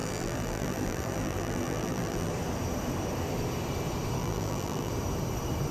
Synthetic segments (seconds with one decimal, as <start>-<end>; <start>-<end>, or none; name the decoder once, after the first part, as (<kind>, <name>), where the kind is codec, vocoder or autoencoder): 0.0-2.3 (vocoder, BigVGAN v2); 4.2-4.9

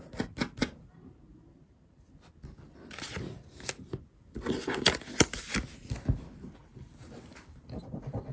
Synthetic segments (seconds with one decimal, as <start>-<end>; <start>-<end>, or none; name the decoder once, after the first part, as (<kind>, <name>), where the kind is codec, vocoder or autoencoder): 6.6-7.6 (vocoder, BigVGAN v2)

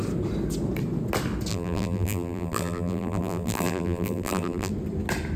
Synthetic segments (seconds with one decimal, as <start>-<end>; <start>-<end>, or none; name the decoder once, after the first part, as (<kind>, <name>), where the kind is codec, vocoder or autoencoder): 1.5-4.7 (vocoder, BigVGAN v2)

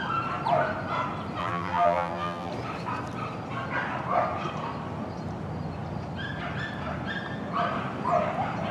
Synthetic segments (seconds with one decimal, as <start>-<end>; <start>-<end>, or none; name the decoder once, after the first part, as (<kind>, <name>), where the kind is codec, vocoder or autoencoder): 1.4-2.5 (vocoder, BigVGAN v2)

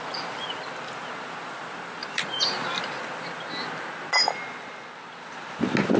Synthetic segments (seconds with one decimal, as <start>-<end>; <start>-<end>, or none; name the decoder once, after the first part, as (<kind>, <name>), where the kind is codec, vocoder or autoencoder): 2.0-2.8 (vocoder, BigVGAN v2)

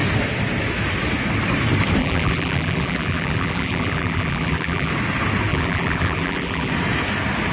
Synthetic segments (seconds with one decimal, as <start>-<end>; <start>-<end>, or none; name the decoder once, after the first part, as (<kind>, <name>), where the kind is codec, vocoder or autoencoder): 2.0-4.9 (vocoder, BigVGAN v2); 5.5-6.7

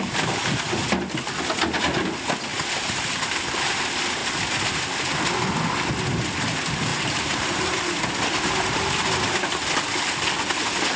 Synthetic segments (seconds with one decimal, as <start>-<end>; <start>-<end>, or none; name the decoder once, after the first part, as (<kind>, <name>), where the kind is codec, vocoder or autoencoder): 2.5-3.3 (vocoder, BigVGAN v2); 6.9-8.8

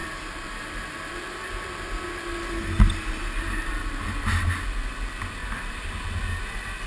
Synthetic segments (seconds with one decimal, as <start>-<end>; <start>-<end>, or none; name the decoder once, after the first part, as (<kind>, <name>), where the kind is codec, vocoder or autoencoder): 0.0-0.6 (vocoder, BigVGAN v2); 5.4-6.0